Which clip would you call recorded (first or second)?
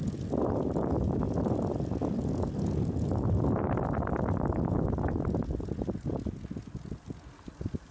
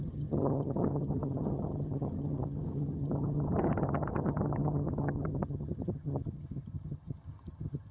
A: first